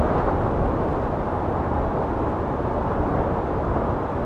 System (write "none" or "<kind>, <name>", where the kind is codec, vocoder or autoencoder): none